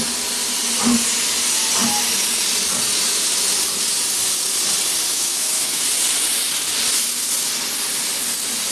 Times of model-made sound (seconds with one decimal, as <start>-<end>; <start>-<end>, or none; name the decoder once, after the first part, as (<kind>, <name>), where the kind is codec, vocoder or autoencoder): 5.1-5.8 (autoencoder, DAC-VAE)